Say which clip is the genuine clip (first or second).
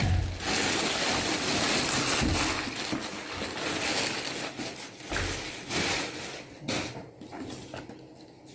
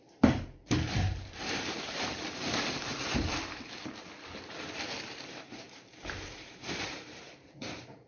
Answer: first